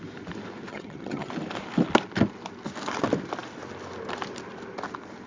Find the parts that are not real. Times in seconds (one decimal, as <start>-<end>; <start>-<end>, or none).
0.7-1.3